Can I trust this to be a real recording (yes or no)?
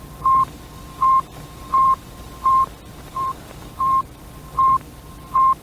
yes